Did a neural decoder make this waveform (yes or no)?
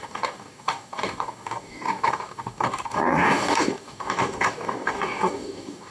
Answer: yes